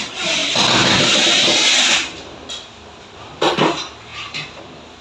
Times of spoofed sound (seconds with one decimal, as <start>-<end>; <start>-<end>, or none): none